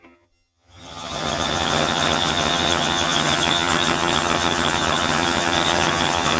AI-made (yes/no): yes